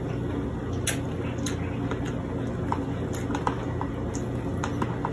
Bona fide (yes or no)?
yes